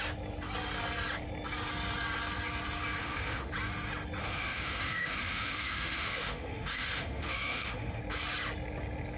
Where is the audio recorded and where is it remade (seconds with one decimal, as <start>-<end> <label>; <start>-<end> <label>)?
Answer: 0.0-3.0 recorded; 3.0-3.5 remade; 3.5-4.2 recorded; 4.2-8.0 remade; 8.0-9.2 recorded

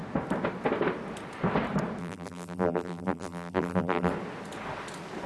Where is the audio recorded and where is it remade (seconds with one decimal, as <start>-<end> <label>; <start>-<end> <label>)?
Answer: 0.0-2.0 recorded; 2.0-4.1 remade; 4.1-5.3 recorded